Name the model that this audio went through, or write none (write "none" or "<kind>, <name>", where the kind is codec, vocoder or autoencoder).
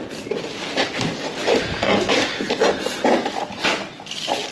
none